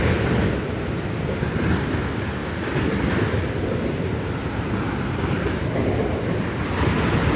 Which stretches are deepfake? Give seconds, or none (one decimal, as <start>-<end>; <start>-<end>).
none